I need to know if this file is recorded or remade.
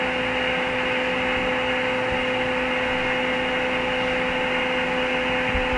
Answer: recorded